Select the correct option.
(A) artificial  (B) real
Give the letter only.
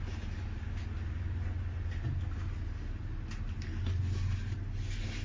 B